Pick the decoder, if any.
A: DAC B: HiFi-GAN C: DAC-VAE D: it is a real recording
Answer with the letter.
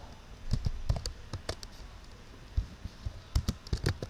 D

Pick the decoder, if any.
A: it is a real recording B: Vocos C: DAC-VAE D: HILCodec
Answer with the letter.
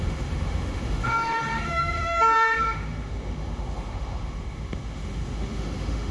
C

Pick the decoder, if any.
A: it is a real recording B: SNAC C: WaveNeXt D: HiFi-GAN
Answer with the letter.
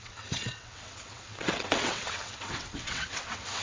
C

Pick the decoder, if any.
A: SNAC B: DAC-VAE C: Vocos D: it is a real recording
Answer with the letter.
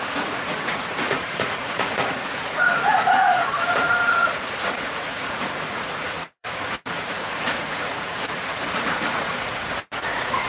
C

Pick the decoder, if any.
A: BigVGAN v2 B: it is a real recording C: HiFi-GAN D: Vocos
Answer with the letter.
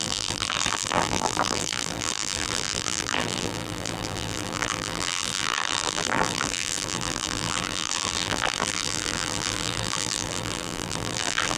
A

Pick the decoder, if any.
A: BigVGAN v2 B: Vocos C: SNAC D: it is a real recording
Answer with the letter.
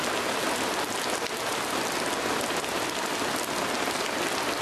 D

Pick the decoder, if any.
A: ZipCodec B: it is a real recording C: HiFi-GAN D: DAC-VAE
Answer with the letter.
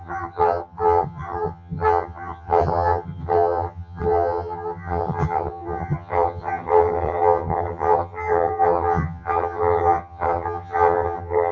C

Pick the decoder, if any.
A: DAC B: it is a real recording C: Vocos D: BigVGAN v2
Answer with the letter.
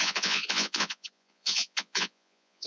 C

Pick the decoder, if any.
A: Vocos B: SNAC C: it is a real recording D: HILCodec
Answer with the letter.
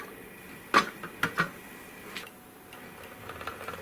C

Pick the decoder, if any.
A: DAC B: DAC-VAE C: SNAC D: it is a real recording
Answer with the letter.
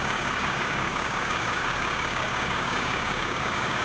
A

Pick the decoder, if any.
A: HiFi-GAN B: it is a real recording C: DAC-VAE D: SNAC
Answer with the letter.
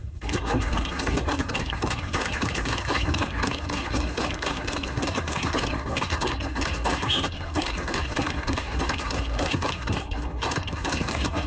D